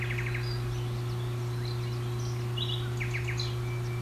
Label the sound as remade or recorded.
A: recorded